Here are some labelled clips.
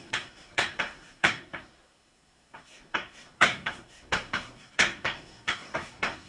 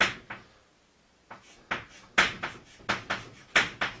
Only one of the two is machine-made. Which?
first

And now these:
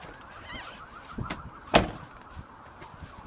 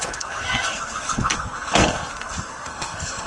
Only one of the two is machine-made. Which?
second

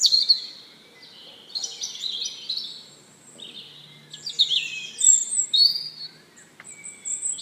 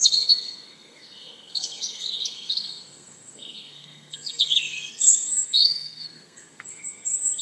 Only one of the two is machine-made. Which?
second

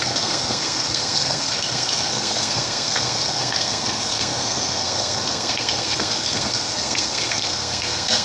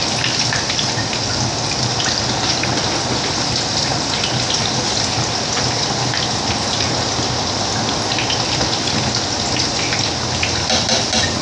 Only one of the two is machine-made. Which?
first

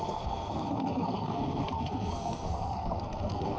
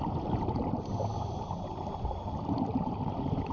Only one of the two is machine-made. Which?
first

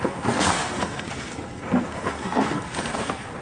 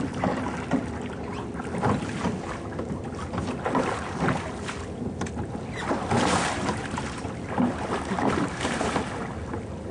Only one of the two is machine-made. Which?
first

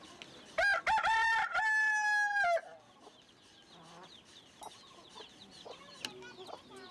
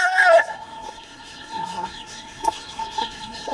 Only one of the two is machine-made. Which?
second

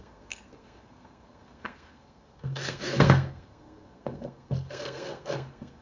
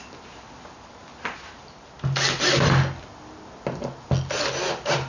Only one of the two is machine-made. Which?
first